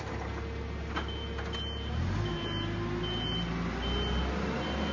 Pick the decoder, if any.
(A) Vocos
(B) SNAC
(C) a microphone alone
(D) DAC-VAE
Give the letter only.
C